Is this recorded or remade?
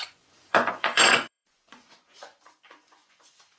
remade